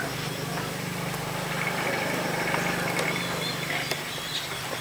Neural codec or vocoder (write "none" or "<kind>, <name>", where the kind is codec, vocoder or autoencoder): none